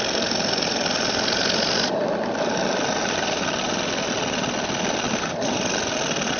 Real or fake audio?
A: real